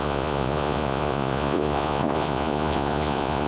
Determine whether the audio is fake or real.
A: fake